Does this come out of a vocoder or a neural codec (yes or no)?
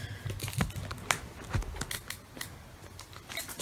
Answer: no